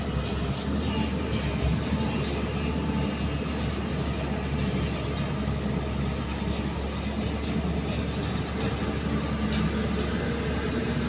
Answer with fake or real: real